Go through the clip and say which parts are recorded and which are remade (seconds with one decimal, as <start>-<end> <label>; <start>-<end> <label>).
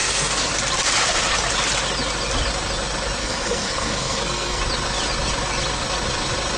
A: 0.0-0.5 remade; 0.5-3.2 recorded; 3.2-4.6 remade; 4.6-6.6 recorded